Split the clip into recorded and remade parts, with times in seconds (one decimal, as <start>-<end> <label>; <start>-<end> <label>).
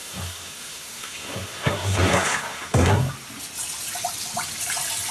0.0-3.1 remade; 3.1-5.1 recorded